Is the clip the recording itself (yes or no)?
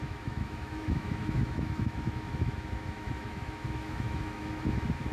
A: no